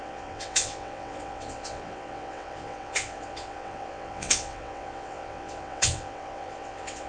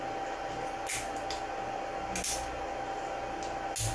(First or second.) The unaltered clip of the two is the second